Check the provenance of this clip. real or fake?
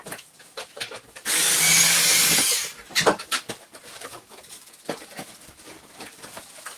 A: fake